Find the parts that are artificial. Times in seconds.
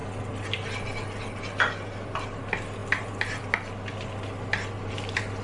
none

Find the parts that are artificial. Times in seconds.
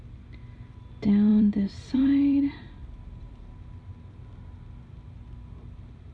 1.3-3.4 (vocoder, BigVGAN v2)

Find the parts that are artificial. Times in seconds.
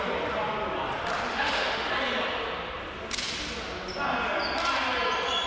1.3-1.9 (autoencoder, DAC-VAE)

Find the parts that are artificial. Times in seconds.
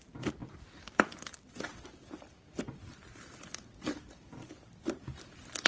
0.4-2.6 (vocoder, BigVGAN v2); 3.5-5.3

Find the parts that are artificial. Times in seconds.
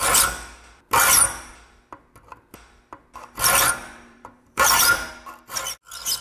3.8-5.1 (vocoder, BigVGAN v2)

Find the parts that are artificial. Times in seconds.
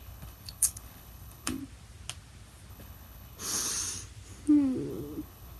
0.0-1.6 (codec, HILCodec); 2.7-3.7; 4.9-5.6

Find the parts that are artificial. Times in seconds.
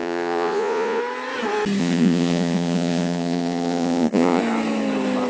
0.0-1.0 (vocoder, Vocos); 1.8-4.4